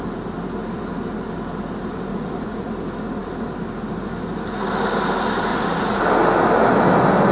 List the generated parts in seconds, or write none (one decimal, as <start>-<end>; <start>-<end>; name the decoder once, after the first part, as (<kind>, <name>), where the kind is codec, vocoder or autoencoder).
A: 2.1-2.7 (vocoder, Vocos); 5.5-6.0